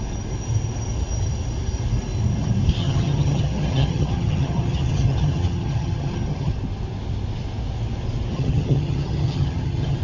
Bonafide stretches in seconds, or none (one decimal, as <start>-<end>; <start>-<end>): 0.0-2.8; 6.5-8.3